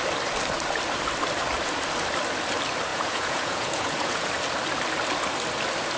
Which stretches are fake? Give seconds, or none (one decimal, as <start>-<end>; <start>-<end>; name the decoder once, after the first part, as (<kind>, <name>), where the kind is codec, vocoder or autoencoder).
2.9-4.3 (vocoder, Vocos)